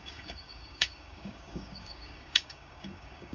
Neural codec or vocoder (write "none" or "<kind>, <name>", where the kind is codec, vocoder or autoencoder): codec, DAC